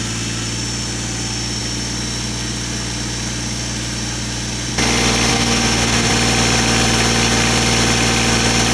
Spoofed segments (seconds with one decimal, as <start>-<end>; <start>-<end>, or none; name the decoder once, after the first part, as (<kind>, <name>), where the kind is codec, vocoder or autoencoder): 5.3-6.1 (autoencoder, DAC-VAE)